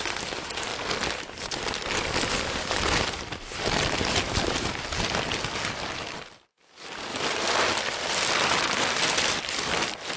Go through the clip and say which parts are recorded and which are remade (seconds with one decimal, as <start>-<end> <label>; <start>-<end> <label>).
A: 0.0-0.7 remade; 0.7-2.7 recorded; 2.7-10.2 remade